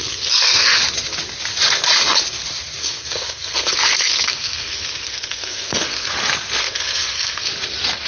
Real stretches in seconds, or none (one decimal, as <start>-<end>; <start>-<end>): 0.8-2.8; 6.1-6.6; 7.5-8.1